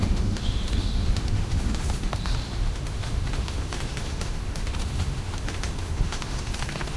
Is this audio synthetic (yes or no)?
yes